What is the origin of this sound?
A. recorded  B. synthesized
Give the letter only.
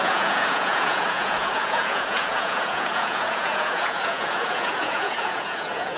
B